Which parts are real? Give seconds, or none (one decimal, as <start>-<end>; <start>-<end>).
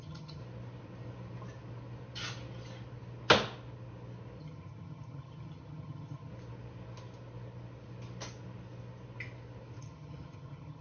0.4-4.4; 6.3-9.8